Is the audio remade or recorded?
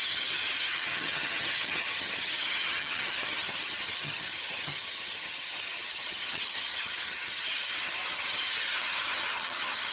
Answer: remade